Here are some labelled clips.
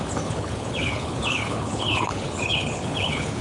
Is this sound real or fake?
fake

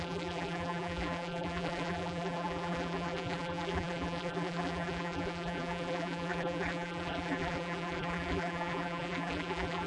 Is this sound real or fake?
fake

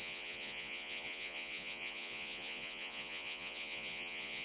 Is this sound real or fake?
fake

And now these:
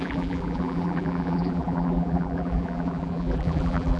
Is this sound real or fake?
fake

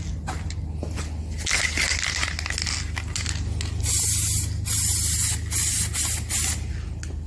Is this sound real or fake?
real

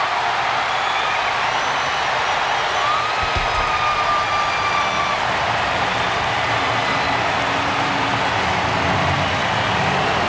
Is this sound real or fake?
real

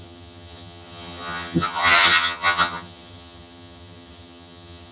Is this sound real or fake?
fake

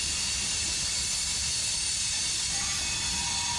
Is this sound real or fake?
real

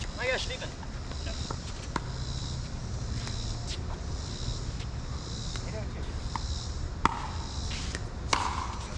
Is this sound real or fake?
real